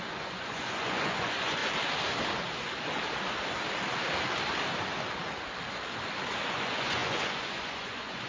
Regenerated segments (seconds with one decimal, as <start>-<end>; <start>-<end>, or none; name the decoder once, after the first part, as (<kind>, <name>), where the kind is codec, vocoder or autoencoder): 0.0-1.6 (vocoder, Vocos); 6.5-8.3